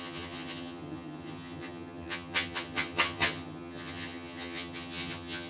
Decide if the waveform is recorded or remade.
remade